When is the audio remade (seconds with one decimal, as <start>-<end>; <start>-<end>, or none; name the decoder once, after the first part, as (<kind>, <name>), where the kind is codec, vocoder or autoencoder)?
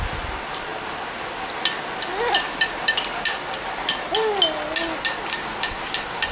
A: none